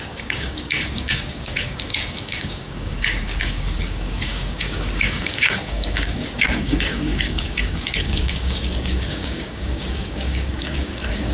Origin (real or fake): fake